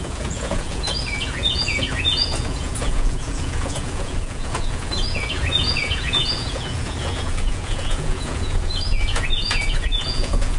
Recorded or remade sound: remade